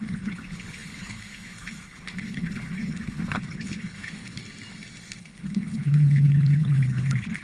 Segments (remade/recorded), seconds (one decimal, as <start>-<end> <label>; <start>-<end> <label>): 0.0-4.4 remade; 4.4-5.2 recorded; 5.2-7.4 remade